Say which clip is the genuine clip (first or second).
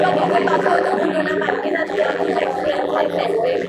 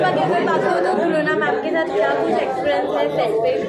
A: second